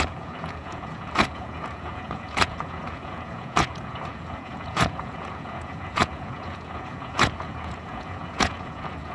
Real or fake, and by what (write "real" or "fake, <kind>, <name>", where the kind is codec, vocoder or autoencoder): fake, vocoder, Vocos